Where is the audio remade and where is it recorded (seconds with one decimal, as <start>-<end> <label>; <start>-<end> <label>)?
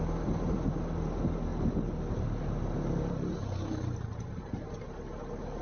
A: 0.0-5.6 recorded